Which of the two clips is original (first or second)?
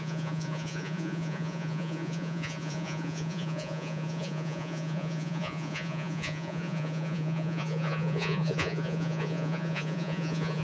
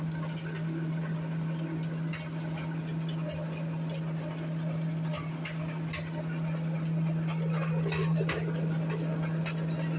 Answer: second